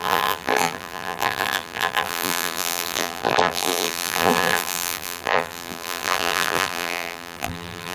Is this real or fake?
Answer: fake